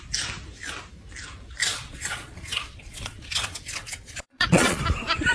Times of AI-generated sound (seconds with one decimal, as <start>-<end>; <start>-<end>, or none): 1.6-4.8